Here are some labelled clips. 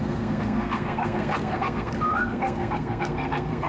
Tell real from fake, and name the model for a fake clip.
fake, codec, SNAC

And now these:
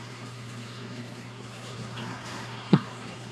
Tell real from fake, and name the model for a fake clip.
fake, codec, SNAC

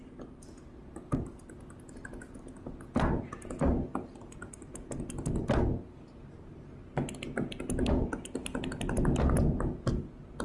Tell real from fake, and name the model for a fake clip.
real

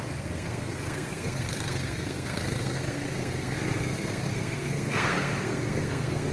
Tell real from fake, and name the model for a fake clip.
fake, codec, SNAC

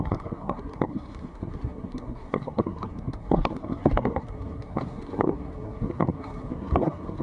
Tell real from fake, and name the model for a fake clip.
fake, codec, SNAC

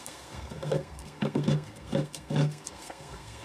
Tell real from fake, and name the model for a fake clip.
fake, codec, SNAC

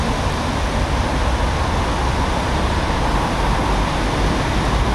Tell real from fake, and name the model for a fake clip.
real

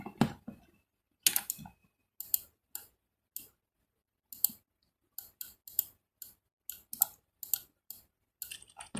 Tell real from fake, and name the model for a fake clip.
real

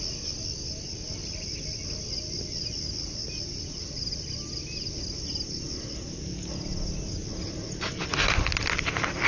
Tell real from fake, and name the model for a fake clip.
real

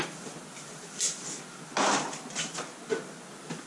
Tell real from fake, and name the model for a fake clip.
real